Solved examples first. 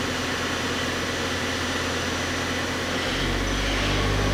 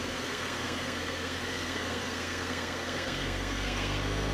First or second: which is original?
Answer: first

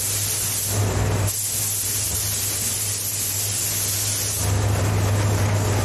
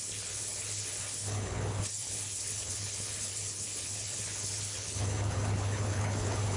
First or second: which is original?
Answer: first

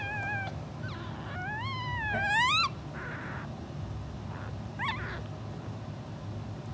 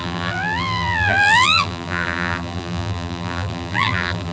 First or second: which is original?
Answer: first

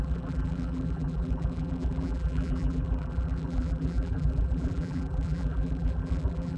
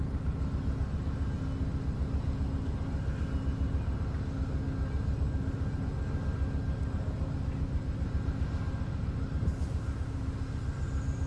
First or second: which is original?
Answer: second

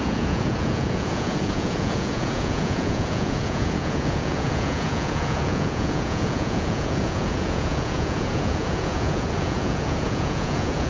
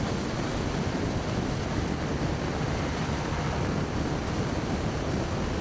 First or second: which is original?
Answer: second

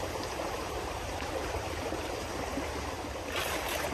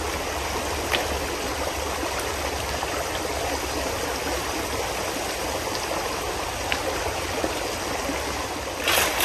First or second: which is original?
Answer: second